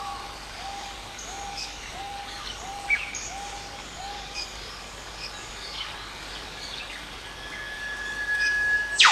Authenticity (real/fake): fake